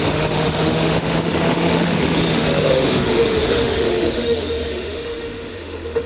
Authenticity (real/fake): fake